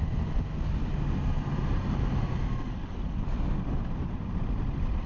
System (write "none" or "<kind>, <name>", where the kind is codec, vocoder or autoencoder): none